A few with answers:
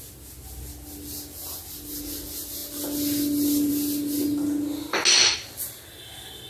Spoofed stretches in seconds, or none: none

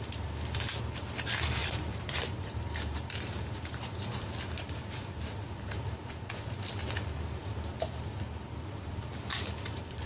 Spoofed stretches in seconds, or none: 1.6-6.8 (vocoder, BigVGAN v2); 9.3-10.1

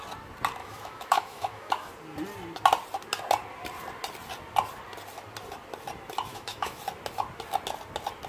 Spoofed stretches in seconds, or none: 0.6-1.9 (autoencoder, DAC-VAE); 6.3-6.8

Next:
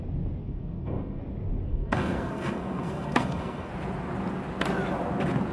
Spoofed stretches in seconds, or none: 0.4-1.2 (codec, SNAC); 1.7-3.7